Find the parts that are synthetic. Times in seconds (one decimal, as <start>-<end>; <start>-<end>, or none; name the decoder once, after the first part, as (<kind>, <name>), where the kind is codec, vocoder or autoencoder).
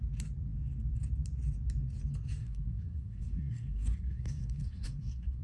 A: 2.4-5.4 (codec, SNAC)